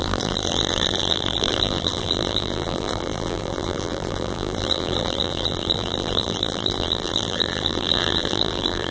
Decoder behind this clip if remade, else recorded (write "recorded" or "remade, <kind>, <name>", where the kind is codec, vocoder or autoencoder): remade, vocoder, BigVGAN v2